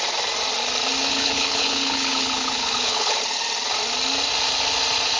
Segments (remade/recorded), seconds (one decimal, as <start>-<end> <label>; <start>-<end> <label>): 0.0-1.1 recorded; 1.1-3.2 remade; 3.2-5.2 recorded